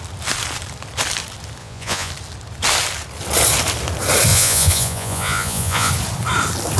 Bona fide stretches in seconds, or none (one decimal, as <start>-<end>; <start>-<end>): 0.0-1.6; 2.1-4.3; 5.9-6.8